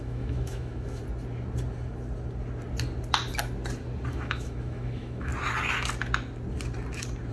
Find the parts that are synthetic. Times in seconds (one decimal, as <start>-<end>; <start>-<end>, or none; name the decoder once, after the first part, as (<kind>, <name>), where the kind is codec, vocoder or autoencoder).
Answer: 0.0-1.0 (autoencoder, DAC-VAE); 4.1-5.3